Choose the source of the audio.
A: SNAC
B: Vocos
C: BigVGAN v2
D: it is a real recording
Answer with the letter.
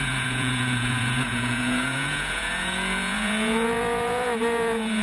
B